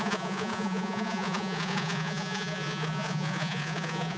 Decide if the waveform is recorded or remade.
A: remade